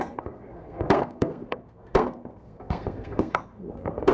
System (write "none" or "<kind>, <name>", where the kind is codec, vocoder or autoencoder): codec, SNAC